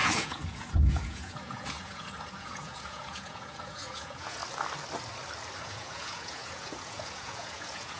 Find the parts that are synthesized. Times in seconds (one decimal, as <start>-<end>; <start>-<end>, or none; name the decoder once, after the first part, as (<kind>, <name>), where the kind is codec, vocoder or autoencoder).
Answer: 0.0-4.4 (vocoder, Vocos); 5.6-8.0